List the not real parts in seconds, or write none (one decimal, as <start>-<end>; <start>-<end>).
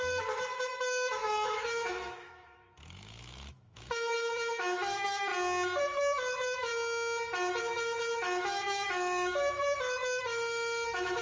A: 0.0-5.3; 5.8-6.7; 7.6-11.2